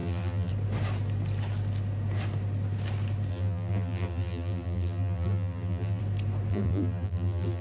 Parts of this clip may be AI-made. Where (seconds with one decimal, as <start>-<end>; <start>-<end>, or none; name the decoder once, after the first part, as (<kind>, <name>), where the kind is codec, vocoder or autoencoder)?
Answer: 0.0-0.5 (vocoder, BigVGAN v2); 3.3-6.0; 6.5-7.6